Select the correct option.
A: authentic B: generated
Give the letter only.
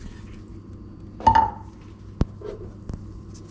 A